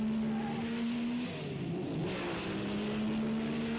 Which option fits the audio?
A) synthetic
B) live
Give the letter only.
B